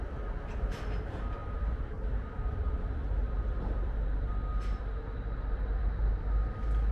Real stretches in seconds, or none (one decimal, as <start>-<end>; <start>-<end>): 0.0-1.4; 5.5-6.9